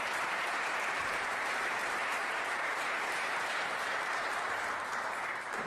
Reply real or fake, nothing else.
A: fake